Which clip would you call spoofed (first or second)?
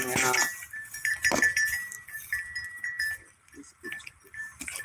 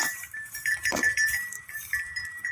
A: second